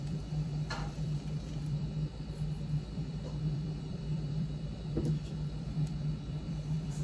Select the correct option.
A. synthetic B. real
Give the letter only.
A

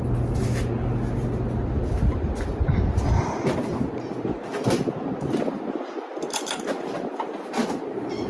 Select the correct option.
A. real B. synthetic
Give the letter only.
A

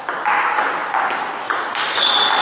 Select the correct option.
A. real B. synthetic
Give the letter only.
A